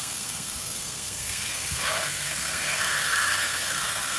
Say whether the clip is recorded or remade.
remade